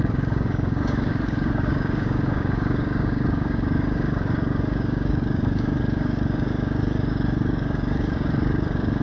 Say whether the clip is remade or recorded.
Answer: remade